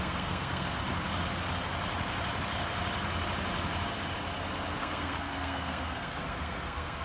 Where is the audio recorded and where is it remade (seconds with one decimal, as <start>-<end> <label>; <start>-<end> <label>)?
0.0-0.8 remade; 0.8-4.8 recorded; 4.8-7.0 remade